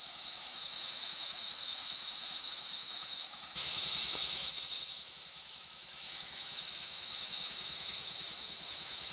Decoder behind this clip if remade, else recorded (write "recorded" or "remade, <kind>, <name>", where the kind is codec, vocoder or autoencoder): remade, autoencoder, DAC-VAE